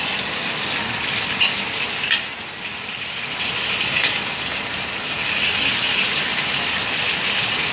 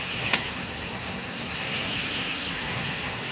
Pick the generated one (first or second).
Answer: second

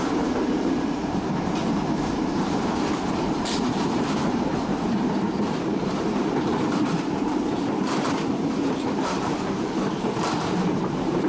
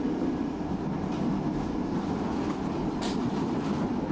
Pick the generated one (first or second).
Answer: first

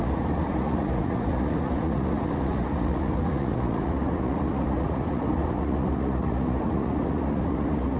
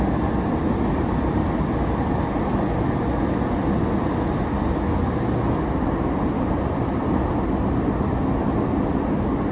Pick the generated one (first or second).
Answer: first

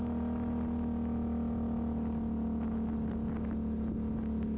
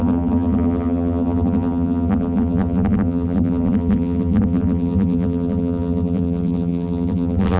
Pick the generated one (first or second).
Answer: second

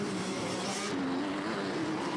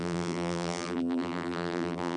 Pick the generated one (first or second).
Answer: second